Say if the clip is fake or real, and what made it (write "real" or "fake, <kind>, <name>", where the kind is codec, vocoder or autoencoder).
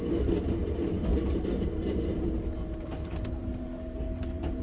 real